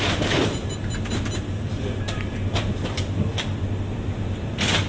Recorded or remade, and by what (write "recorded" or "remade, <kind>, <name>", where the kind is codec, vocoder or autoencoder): remade, vocoder, BigVGAN v2